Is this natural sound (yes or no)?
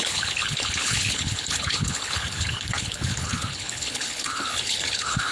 no